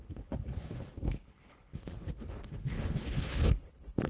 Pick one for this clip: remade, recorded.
remade